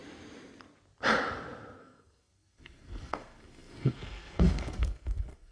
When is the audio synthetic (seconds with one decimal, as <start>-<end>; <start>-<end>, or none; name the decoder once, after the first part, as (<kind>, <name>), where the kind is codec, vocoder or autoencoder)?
1.8-5.5 (codec, SNAC)